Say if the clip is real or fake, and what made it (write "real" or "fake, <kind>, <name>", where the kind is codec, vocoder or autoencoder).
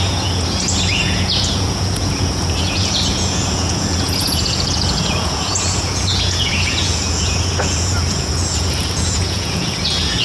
fake, vocoder, Vocos